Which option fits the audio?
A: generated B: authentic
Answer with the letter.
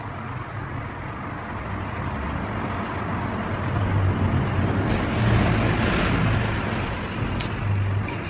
B